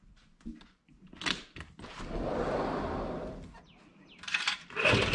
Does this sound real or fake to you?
real